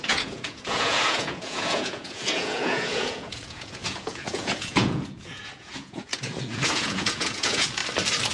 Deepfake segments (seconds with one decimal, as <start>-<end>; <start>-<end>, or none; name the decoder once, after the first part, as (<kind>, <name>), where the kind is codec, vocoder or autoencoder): 0.0-7.8 (vocoder, Vocos)

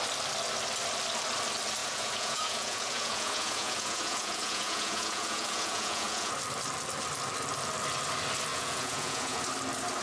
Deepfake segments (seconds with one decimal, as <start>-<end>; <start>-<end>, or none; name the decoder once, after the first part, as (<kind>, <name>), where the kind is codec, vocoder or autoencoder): 1.8-6.3 (vocoder, Vocos); 8.5-9.4

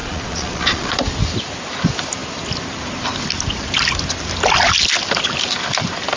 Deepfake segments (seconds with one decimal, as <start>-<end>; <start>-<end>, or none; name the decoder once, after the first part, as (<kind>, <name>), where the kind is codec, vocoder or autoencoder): 0.0-0.9 (vocoder, Vocos)

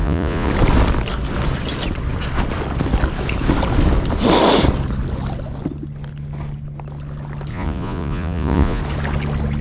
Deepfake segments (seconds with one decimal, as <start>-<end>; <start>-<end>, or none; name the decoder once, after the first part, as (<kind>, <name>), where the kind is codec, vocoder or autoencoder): 0.0-0.5 (vocoder, Vocos); 7.5-8.8

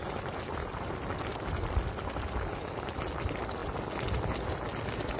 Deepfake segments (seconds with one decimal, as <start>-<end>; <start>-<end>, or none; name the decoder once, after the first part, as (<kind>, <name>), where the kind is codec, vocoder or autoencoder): none

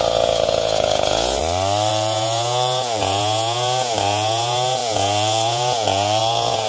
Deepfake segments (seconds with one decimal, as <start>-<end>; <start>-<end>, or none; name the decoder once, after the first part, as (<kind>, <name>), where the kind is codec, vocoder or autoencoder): 0.0-1.4 (vocoder, Vocos); 1.9-6.7

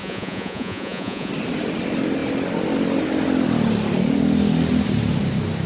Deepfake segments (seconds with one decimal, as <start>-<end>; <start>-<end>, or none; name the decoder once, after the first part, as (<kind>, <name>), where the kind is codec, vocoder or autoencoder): 0.0-1.3 (vocoder, Vocos)

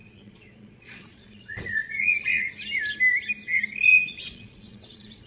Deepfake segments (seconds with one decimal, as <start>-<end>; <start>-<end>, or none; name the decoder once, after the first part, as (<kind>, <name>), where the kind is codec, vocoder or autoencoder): 0.0-2.5 (vocoder, Vocos); 3.9-5.3